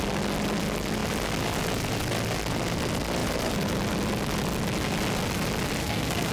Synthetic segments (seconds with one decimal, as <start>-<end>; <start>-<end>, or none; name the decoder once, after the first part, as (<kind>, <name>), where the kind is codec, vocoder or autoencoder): 5.8-6.3 (codec, SNAC)